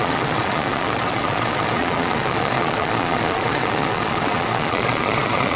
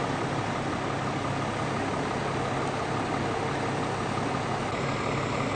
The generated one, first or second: first